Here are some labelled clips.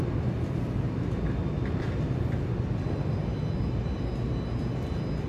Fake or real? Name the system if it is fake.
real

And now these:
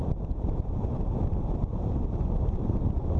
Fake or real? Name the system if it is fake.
fake, vocoder, BigVGAN v2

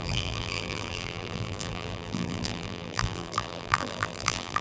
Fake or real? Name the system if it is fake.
fake, vocoder, BigVGAN v2